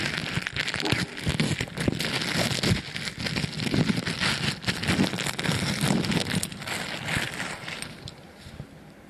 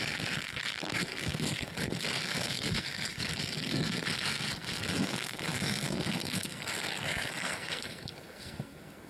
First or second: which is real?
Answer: first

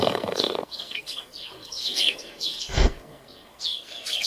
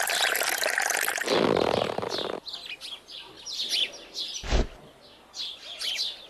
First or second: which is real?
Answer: second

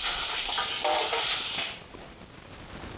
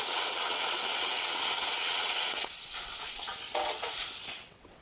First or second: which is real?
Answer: first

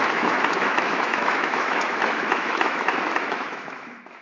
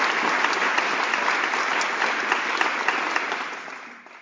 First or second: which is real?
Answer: second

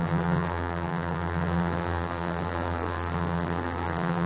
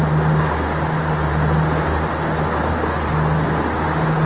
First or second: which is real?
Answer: second